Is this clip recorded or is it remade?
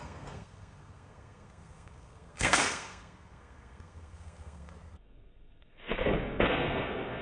remade